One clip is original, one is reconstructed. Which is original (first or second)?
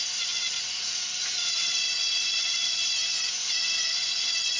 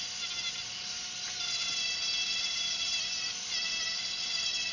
second